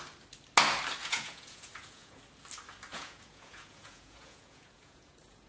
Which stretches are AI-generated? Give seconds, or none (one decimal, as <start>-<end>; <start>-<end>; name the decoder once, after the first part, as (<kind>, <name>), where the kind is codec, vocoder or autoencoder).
1.0-2.2 (vocoder, Vocos); 2.9-5.5